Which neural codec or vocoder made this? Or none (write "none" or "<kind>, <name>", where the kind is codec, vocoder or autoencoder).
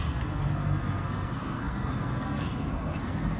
codec, SNAC